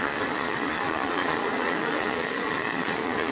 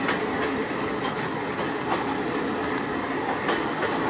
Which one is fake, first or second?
first